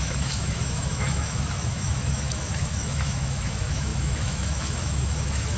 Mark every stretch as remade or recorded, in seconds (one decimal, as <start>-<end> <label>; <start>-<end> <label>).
0.0-5.6 remade